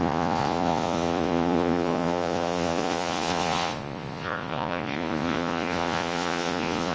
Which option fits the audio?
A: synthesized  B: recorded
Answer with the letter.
A